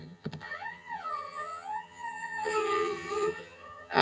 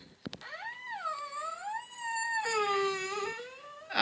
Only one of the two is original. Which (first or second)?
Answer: second